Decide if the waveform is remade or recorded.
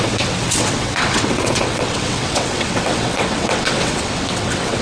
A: remade